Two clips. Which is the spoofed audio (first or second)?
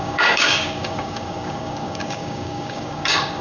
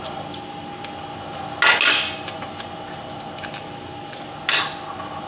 first